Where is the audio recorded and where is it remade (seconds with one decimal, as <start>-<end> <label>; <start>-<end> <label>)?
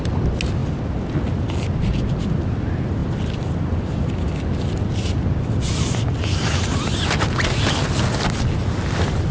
0.0-9.3 recorded